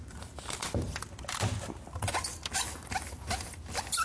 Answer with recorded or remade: recorded